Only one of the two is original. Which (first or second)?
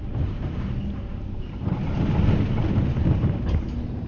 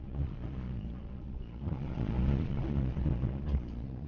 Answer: first